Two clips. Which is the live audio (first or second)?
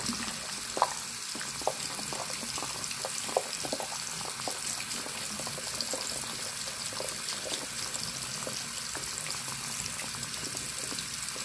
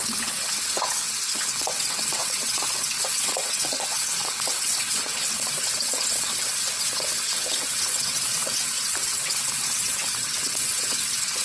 first